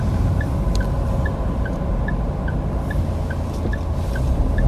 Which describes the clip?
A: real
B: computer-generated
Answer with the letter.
A